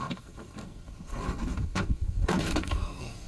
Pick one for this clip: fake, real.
fake